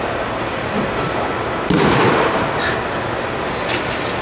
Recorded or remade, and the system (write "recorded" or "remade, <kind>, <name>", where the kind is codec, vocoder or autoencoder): recorded